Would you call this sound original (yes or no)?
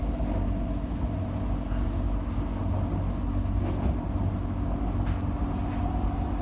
yes